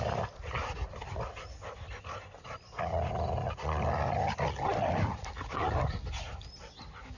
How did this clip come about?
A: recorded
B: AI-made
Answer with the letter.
A